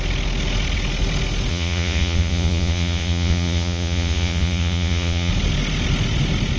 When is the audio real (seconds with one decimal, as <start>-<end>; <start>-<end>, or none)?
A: 0.0-1.5; 5.3-6.6